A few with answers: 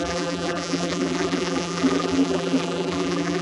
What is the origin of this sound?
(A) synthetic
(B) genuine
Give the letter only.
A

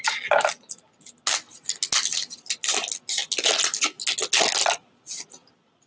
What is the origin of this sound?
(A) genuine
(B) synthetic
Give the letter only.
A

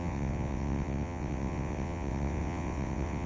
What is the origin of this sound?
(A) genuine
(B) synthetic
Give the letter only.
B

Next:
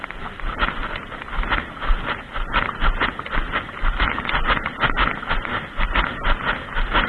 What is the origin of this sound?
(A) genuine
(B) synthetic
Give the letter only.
A